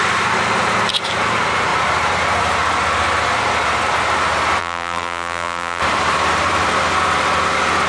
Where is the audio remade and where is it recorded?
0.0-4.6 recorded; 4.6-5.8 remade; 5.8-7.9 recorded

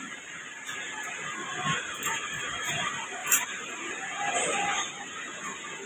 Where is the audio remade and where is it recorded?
0.0-3.2 recorded; 3.2-3.9 remade; 3.9-5.9 recorded

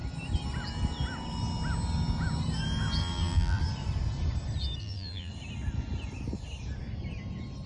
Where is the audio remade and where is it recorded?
0.0-3.0 recorded; 3.0-3.6 remade; 3.6-4.8 recorded; 4.8-5.3 remade; 5.3-7.7 recorded